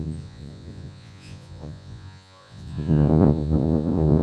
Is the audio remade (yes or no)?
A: yes